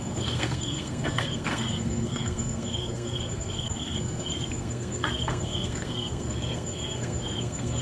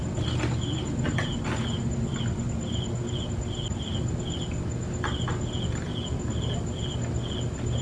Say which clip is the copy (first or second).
first